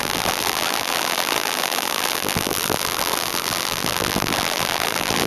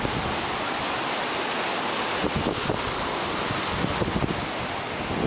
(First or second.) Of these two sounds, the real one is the second